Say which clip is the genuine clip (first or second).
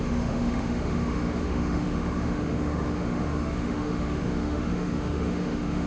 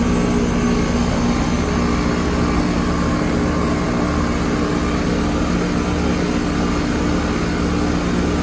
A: second